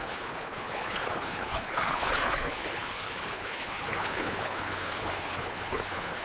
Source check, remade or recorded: remade